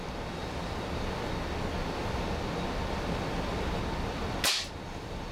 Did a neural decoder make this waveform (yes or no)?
no